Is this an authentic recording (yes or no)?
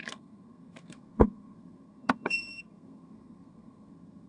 no